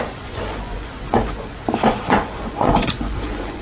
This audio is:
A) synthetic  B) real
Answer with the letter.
A